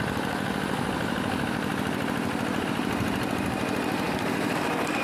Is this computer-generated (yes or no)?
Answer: no